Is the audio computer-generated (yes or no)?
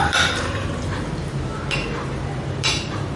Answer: yes